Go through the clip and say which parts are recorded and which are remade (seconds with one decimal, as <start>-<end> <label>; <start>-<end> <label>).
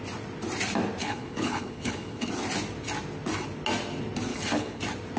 0.0-1.0 recorded; 1.0-2.3 remade; 2.3-4.3 recorded; 4.3-4.8 remade; 4.8-5.2 recorded